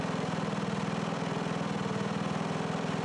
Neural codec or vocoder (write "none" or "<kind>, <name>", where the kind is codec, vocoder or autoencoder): vocoder, BigVGAN v2